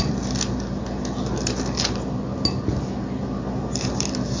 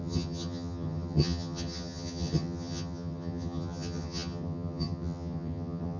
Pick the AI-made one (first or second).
second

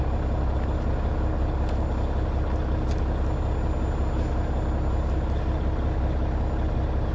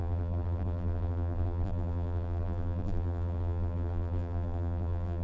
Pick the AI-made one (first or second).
second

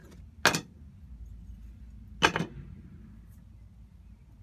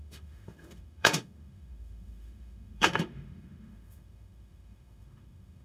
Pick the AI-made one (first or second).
second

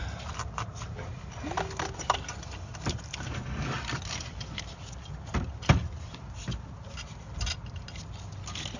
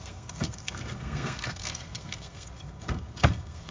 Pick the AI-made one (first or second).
second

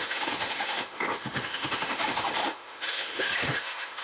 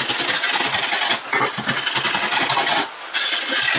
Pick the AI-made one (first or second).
first